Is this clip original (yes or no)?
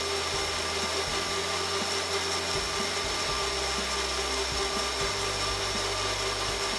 yes